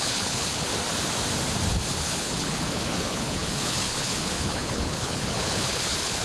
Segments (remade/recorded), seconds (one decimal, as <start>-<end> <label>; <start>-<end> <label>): 0.0-0.7 remade; 0.7-1.9 recorded; 1.9-6.2 remade

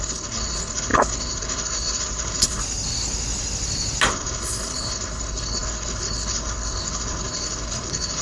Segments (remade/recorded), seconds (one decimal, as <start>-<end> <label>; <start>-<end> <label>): 0.0-2.6 remade; 2.6-4.1 recorded; 4.1-8.2 remade

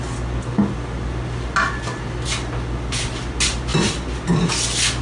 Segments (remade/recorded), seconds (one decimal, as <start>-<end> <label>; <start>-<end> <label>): 0.0-5.0 recorded

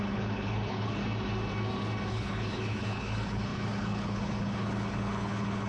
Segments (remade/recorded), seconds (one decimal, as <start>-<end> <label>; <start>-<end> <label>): 0.0-1.0 remade; 1.0-2.1 recorded; 2.1-5.7 remade

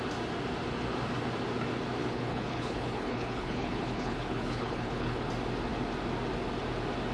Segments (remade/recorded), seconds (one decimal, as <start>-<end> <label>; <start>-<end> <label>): 0.0-2.0 recorded; 2.0-5.3 remade; 5.3-7.1 recorded

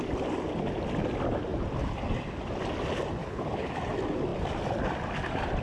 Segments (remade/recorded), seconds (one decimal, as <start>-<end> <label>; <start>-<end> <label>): 0.0-3.2 recorded; 3.2-3.7 remade; 3.7-5.6 recorded